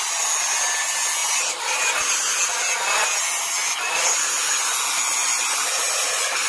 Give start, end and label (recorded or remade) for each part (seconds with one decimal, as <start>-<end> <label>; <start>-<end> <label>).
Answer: 0.0-6.5 recorded

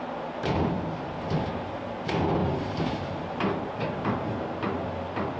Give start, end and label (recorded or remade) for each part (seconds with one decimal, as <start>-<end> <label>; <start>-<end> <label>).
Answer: 0.0-2.4 recorded; 2.4-3.5 remade; 3.5-5.4 recorded

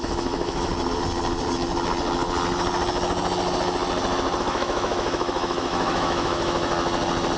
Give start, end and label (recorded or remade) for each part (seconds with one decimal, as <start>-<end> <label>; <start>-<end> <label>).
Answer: 0.0-0.7 remade; 0.7-4.4 recorded; 4.4-6.7 remade; 6.7-7.4 recorded

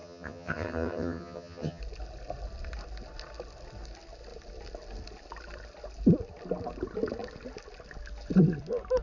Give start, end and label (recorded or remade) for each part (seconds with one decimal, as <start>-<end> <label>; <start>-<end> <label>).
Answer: 0.0-1.8 remade; 1.8-9.0 recorded

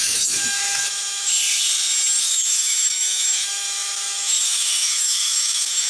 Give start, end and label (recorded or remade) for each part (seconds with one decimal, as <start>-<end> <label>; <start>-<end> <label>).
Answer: 0.0-1.3 remade; 1.3-2.2 recorded; 2.2-5.9 remade

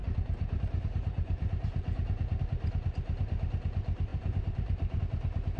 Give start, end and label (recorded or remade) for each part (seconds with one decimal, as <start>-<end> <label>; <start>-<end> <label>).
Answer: 0.0-2.4 remade; 2.4-4.1 recorded; 4.1-5.0 remade; 5.0-5.6 recorded